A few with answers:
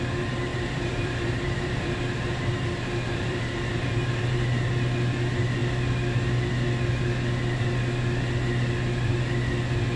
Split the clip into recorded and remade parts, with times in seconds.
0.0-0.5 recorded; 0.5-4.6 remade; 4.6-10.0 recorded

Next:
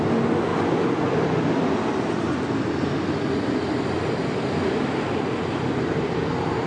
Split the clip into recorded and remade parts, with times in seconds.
0.0-0.5 remade; 0.5-4.5 recorded; 4.5-6.7 remade

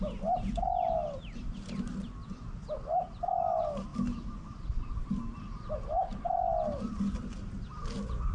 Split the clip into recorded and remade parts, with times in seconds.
0.0-8.3 recorded

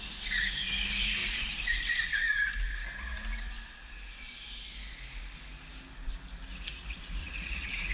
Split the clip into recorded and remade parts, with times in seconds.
0.0-7.2 recorded; 7.2-7.9 remade

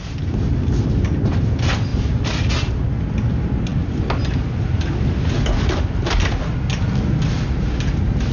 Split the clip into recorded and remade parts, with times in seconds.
0.0-8.3 recorded

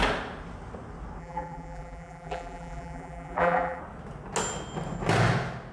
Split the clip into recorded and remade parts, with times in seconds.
0.0-1.2 recorded; 1.2-3.8 remade; 3.8-5.7 recorded

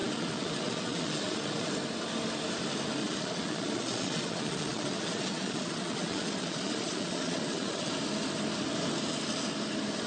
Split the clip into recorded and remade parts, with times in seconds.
0.0-1.7 remade; 1.7-3.0 recorded; 3.0-7.9 remade; 7.9-10.1 recorded

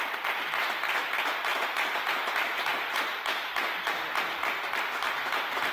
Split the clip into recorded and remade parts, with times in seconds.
0.0-5.7 recorded